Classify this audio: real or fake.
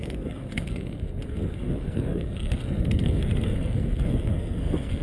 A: fake